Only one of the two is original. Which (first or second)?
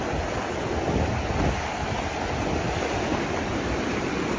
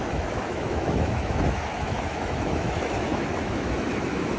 first